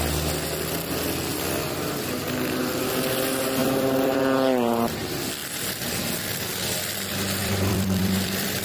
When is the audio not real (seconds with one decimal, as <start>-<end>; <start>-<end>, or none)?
3.6-4.2; 5.4-6.0; 7.4-8.6